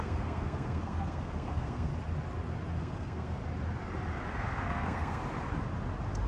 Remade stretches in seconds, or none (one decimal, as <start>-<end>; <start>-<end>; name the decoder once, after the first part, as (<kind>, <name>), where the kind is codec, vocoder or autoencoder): 0.0-1.9 (codec, SNAC); 2.8-3.4; 4.3-5.2